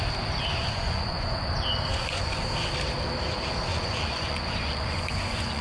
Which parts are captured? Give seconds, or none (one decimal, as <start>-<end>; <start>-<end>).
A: 0.0-0.6; 1.5-1.9; 2.4-3.7

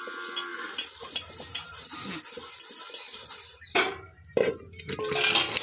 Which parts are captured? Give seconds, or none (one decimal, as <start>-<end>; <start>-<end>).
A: 0.0-0.5; 2.1-3.1; 4.6-5.6

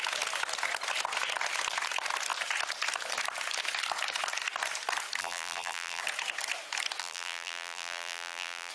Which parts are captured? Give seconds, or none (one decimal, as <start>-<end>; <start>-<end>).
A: 0.0-5.2; 6.0-7.0

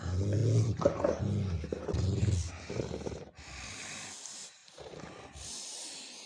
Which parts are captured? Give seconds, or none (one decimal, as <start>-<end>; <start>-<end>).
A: 0.0-6.3

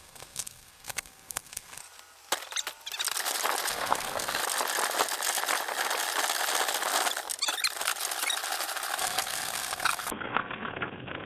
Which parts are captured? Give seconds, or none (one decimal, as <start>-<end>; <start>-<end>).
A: 1.8-3.7; 4.4-9.0